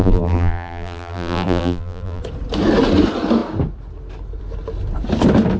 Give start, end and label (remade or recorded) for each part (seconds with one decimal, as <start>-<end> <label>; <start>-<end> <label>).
0.0-2.2 remade; 2.2-5.6 recorded